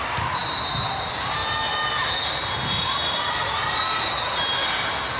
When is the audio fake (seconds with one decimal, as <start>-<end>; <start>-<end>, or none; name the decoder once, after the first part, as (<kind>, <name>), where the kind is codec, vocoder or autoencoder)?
none